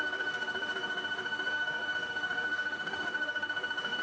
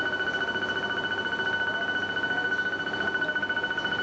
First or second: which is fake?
first